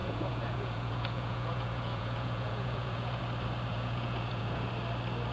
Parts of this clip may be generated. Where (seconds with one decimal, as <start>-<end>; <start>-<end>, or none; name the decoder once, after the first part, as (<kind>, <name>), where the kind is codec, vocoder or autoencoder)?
0.0-3.2 (vocoder, Vocos); 3.7-4.7